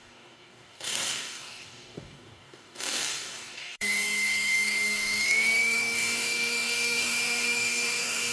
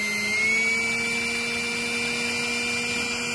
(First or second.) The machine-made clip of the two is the first